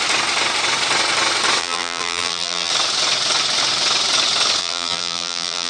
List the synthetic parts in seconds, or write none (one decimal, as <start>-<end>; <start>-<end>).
1.6-2.7; 4.6-5.7